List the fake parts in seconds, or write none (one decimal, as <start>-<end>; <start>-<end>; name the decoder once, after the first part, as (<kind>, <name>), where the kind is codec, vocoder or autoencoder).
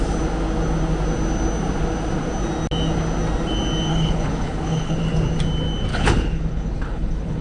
3.9-5.0 (codec, HILCodec); 5.9-7.4